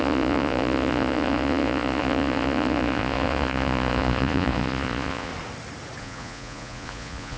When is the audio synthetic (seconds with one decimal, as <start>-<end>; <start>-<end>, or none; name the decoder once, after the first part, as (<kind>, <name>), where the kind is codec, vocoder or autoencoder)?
0.0-5.3 (vocoder, Vocos); 6.0-7.4